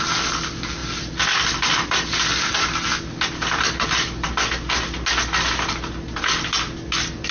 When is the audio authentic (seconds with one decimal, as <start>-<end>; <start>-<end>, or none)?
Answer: 0.0-7.3